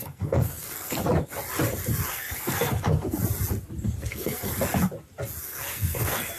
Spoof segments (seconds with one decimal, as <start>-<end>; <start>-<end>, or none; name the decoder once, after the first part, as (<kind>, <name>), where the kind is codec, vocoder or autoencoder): 0.0-1.0 (codec, SNAC); 2.1-3.2; 3.8-4.5; 5.4-6.4